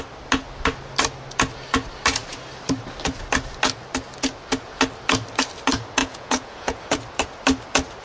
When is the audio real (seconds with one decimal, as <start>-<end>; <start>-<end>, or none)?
0.0-6.0; 6.8-8.0

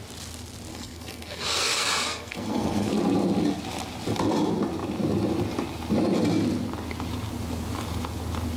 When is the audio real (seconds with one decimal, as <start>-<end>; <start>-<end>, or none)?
0.0-0.7; 2.9-8.6